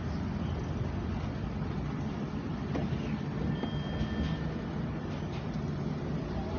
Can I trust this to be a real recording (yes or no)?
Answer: yes